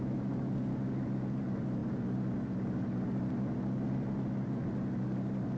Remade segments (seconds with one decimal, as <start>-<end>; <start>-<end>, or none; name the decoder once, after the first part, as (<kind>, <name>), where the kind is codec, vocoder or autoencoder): none